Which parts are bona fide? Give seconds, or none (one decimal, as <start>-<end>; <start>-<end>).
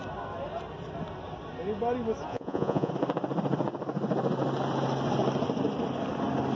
0.0-2.3; 2.9-6.5